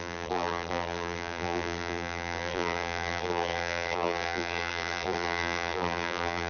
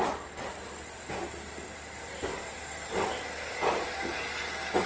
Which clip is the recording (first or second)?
second